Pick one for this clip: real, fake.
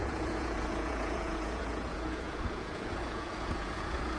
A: fake